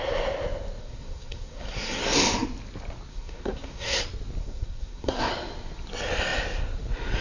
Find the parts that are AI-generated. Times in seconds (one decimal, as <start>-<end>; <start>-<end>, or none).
0.8-2.0; 3.1-4.0; 4.4-5.3